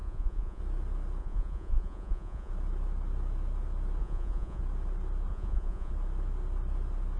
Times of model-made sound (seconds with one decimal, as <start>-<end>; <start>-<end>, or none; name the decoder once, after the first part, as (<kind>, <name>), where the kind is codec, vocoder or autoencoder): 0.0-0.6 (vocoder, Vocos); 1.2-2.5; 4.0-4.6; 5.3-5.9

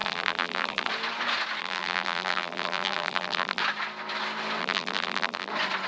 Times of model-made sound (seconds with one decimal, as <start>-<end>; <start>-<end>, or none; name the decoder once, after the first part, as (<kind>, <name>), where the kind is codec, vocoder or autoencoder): 0.0-0.9 (vocoder, BigVGAN v2); 1.6-3.6; 4.6-5.5

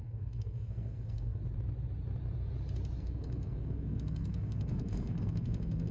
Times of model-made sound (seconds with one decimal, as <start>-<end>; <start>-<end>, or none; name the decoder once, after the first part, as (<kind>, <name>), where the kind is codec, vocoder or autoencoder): 0.0-1.4 (codec, SNAC); 3.0-5.9